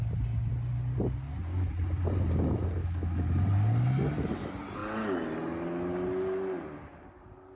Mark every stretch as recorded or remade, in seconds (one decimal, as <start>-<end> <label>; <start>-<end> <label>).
0.0-2.8 recorded; 2.8-3.4 remade; 3.4-7.6 recorded